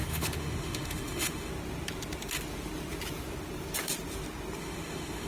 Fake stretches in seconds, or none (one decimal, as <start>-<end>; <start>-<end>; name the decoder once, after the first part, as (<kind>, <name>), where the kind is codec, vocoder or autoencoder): 0.0-1.5 (autoencoder, DAC-VAE); 4.6-5.3